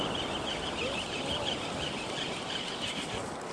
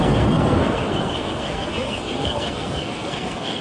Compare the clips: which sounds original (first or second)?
first